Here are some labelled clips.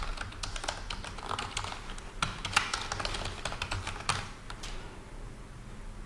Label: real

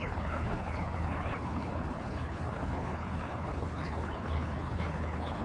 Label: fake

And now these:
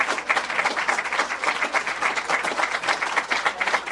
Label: real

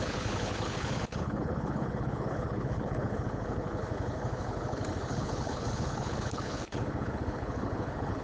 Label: fake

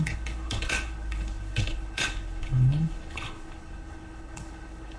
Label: fake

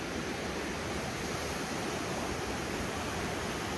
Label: real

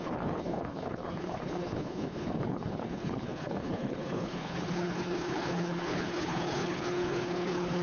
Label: fake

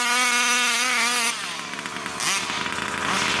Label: real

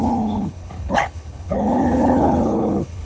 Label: fake